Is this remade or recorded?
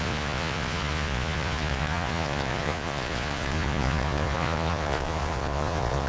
remade